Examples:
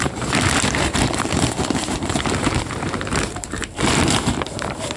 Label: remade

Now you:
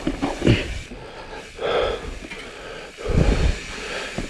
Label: recorded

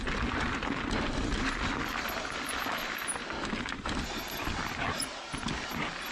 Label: recorded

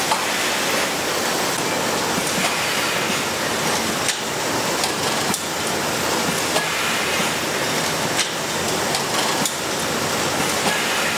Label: recorded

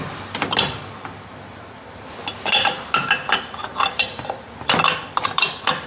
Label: remade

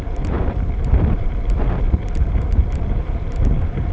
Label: remade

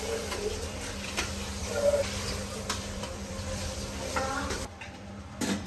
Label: remade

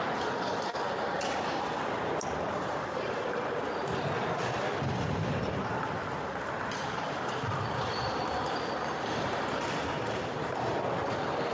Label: remade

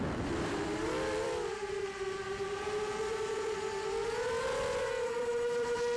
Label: remade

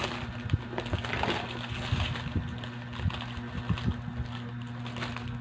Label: recorded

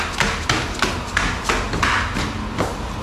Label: recorded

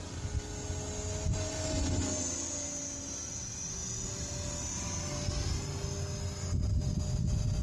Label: recorded